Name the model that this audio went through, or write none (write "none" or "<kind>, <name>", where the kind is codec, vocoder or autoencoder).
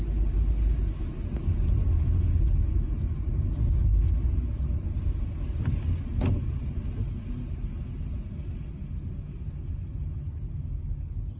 none